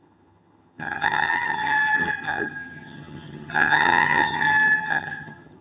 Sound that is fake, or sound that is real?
fake